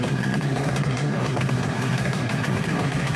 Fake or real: fake